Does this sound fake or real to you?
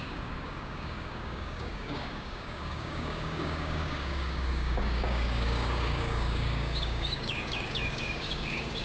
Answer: fake